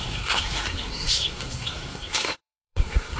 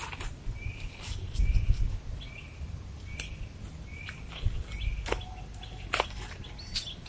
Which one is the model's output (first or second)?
first